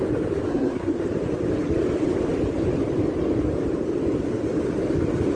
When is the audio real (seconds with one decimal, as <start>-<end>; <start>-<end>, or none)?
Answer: 0.0-0.5; 1.0-5.4